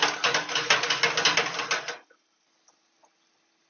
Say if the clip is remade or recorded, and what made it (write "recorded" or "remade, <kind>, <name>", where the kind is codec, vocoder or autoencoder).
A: recorded